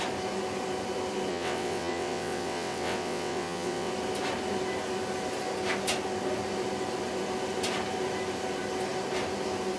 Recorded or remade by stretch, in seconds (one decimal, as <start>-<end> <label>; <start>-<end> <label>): 0.0-1.3 recorded; 1.3-3.9 remade; 3.9-9.8 recorded